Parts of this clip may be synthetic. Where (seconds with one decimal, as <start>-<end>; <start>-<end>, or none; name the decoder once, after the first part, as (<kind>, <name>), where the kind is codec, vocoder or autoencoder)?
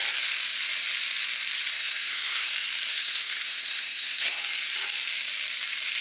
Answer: 1.7-2.5 (codec, SNAC); 2.9-4.4